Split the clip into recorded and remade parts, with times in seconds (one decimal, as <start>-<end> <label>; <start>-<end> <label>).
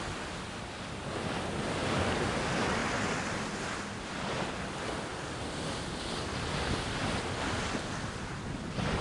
0.0-9.0 recorded